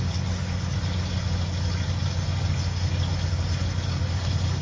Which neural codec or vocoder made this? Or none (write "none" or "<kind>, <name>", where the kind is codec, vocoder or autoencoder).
none